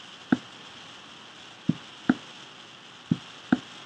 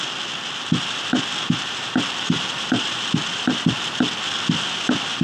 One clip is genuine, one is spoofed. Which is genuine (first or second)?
first